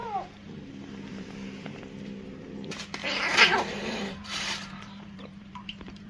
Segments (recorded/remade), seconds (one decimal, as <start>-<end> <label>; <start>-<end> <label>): 0.0-1.8 remade; 1.8-3.0 recorded; 3.0-6.1 remade